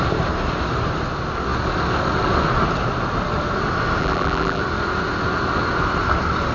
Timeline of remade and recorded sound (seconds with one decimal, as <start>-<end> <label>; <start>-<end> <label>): 0.0-4.0 recorded; 4.0-4.6 remade; 4.6-6.5 recorded